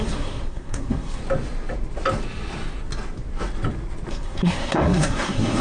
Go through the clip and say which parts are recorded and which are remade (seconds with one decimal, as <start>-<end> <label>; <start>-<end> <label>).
0.0-1.2 remade; 1.2-4.1 recorded; 4.1-5.6 remade